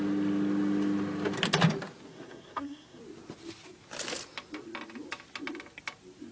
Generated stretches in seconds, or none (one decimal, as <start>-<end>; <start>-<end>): 2.1-3.0